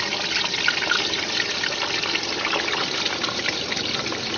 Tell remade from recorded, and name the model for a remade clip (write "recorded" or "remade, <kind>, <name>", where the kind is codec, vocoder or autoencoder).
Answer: recorded